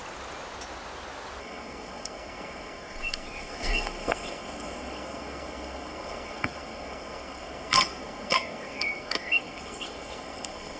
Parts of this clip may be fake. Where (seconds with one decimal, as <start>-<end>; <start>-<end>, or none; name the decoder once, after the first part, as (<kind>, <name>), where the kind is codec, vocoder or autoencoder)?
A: 1.4-10.8 (codec, SNAC)